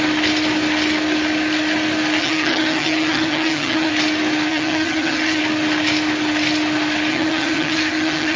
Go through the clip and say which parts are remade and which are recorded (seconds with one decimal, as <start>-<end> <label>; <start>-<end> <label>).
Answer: 0.0-2.2 recorded; 2.2-3.9 remade; 3.9-4.5 recorded; 4.5-5.4 remade; 5.4-7.1 recorded; 7.1-8.4 remade